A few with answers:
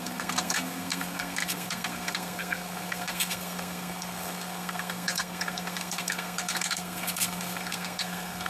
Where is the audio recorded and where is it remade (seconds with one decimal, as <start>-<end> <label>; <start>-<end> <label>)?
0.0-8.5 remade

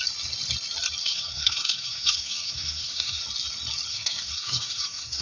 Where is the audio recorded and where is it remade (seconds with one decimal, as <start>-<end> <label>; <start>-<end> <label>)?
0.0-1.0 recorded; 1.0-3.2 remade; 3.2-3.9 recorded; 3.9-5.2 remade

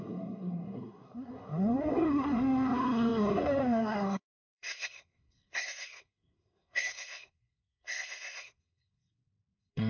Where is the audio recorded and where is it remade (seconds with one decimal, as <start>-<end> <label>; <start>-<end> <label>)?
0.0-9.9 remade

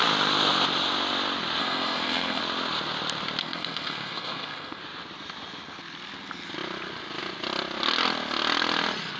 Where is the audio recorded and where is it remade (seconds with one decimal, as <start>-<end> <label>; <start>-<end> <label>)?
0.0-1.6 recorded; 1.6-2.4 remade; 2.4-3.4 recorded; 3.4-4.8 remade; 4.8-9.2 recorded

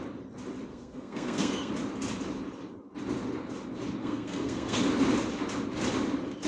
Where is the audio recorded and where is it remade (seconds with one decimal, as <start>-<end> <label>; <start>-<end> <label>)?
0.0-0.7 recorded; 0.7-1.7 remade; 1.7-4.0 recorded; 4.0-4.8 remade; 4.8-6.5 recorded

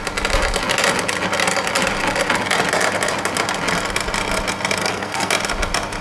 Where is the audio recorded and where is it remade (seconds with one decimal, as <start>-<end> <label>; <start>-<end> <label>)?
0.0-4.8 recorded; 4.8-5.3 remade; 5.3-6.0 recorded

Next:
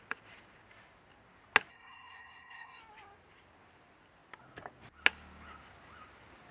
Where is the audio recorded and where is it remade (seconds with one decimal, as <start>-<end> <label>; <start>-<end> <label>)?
0.0-1.7 recorded; 1.7-2.8 remade; 2.8-6.5 recorded

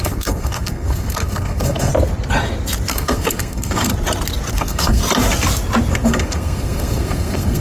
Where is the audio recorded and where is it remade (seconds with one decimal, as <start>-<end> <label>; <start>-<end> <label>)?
0.0-1.9 remade; 1.9-2.9 recorded; 2.9-3.9 remade; 3.9-4.5 recorded; 4.5-5.0 remade; 5.0-5.9 recorded; 5.9-7.6 remade